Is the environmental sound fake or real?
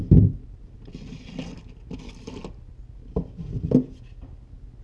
real